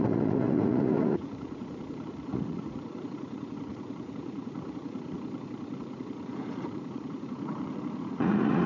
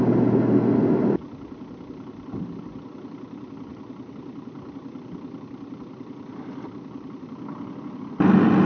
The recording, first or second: second